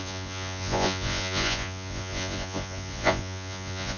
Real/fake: fake